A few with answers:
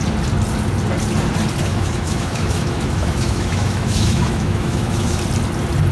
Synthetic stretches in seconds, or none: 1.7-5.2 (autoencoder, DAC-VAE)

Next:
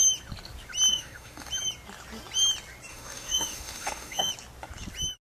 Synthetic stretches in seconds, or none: 0.9-1.5 (autoencoder, DAC-VAE); 2.9-4.3

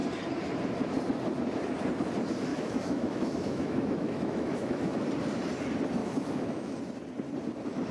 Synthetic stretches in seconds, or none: 2.5-5.0 (autoencoder, DAC-VAE); 6.0-6.8

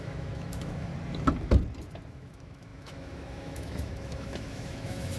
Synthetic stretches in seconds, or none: 0.0-0.9 (autoencoder, DAC-VAE); 2.1-5.2